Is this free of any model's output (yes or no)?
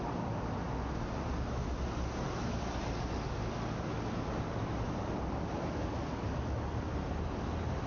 yes